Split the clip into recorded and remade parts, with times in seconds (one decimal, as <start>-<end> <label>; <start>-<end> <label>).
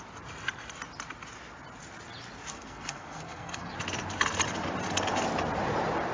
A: 0.0-2.5 recorded; 2.5-3.7 remade; 3.7-6.1 recorded